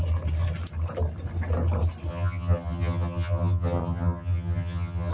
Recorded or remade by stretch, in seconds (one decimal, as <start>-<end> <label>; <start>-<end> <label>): 0.0-2.1 recorded; 2.1-5.1 remade